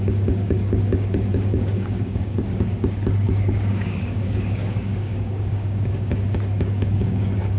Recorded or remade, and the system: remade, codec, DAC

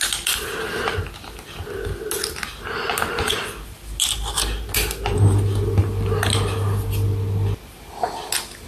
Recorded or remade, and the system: recorded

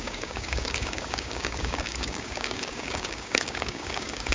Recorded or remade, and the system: remade, codec, DAC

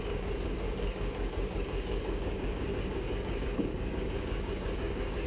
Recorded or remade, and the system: remade, codec, DAC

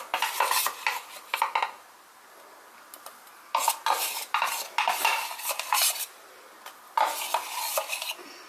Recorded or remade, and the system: recorded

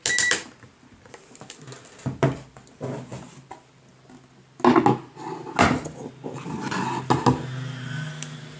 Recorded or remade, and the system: recorded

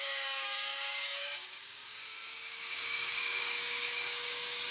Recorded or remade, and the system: remade, codec, DAC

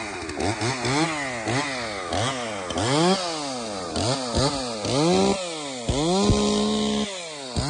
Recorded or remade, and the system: recorded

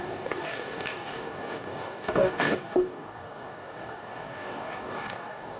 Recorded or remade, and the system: remade, codec, DAC